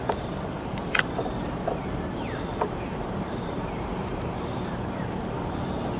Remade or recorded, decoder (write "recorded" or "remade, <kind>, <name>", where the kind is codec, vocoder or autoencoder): remade, vocoder, BigVGAN v2